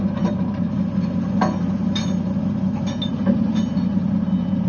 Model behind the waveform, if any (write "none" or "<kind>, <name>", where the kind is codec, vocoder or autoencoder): none